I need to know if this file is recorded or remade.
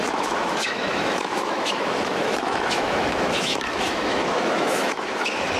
remade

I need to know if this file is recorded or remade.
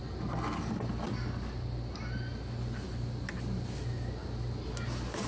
recorded